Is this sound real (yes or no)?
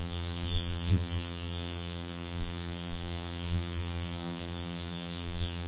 no